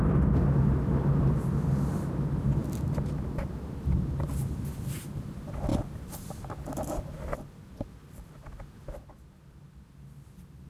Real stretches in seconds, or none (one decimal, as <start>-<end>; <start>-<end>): 0.0-2.6; 3.5-5.7; 7.0-10.7